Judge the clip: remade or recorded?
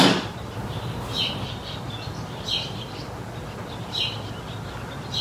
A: recorded